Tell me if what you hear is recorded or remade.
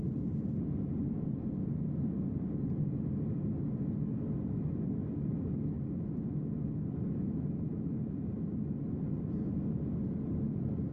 recorded